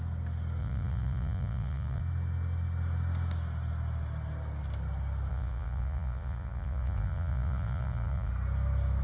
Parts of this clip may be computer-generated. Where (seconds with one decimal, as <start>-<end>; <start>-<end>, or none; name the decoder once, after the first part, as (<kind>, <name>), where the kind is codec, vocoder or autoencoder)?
0.6-2.0 (vocoder, Vocos); 5.3-8.3